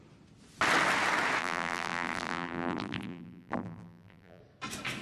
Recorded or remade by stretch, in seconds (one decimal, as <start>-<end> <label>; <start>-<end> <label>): 0.0-1.4 recorded; 1.4-4.4 remade; 4.4-5.0 recorded